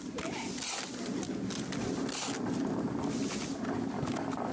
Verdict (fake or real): real